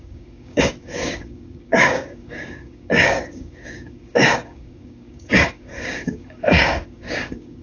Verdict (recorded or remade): remade